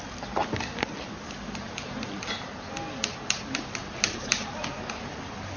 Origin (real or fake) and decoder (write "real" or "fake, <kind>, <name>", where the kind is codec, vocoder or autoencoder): real